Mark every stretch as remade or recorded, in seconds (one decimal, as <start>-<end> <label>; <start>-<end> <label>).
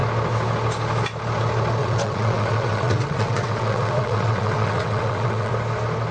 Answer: 0.0-1.8 recorded; 1.8-5.5 remade; 5.5-6.1 recorded